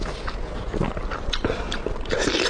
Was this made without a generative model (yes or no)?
yes